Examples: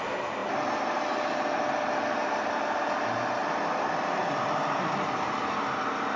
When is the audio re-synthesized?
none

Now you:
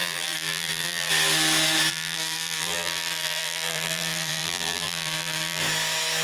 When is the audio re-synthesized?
0.0-1.1 (vocoder, BigVGAN v2); 1.9-5.6

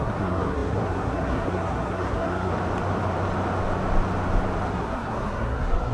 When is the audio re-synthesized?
0.0-2.5 (codec, SNAC); 4.7-5.9

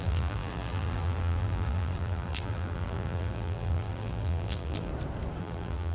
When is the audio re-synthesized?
0.0-4.9 (vocoder, BigVGAN v2); 5.4-5.9

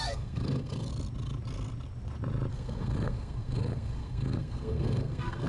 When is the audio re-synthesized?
0.0-0.9 (codec, SNAC); 2.5-5.5

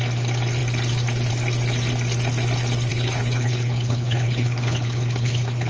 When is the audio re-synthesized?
2.9-5.7 (codec, HILCodec)

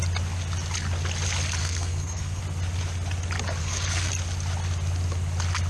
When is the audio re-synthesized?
1.6-2.4 (codec, SNAC); 3.6-4.1